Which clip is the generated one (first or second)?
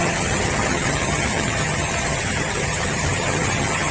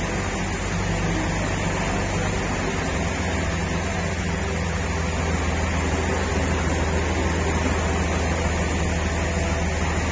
first